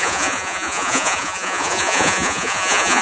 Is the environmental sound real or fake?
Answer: fake